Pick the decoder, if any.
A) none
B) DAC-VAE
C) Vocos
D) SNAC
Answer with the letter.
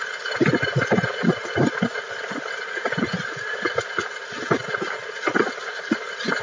A